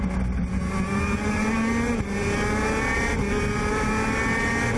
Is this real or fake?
real